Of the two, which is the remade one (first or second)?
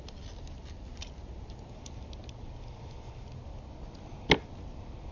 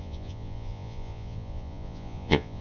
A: second